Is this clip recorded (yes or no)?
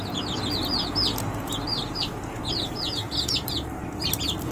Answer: yes